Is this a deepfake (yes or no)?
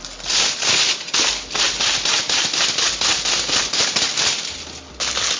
no